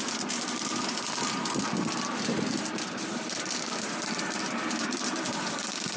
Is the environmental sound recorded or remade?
remade